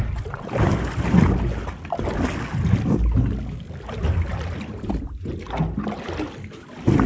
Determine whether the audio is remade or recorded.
recorded